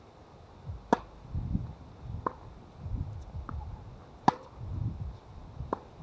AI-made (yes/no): no